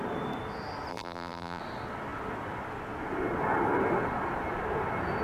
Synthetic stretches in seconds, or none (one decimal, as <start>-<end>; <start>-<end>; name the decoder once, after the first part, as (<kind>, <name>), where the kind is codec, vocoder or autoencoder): 0.9-1.6 (vocoder, BigVGAN v2)